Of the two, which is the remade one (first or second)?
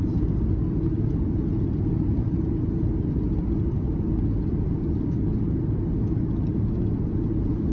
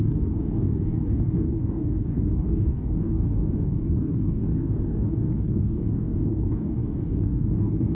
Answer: second